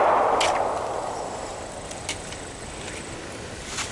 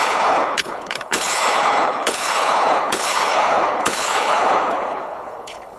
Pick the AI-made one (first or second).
second